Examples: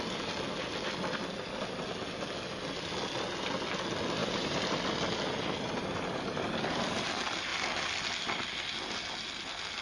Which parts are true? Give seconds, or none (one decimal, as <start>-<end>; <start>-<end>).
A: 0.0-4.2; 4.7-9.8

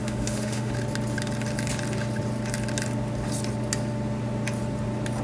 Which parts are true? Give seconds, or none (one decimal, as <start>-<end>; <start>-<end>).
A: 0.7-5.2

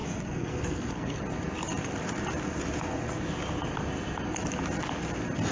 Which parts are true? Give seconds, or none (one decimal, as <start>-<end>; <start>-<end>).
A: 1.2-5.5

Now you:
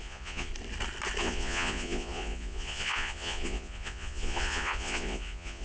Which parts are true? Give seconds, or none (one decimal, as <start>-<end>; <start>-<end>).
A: 0.5-1.2

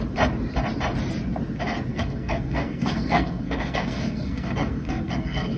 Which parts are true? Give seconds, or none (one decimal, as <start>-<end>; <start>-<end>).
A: 0.0-1.9

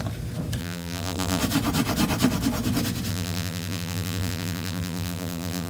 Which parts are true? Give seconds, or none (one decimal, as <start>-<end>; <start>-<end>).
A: 0.0-0.6; 1.4-3.1